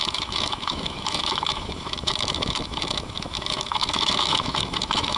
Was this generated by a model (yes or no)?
yes